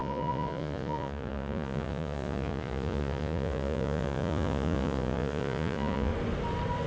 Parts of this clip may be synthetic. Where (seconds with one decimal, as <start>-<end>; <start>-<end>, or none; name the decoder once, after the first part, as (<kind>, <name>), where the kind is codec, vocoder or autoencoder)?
0.0-6.1 (vocoder, Vocos)